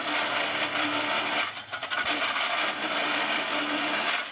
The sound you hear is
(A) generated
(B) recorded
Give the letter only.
B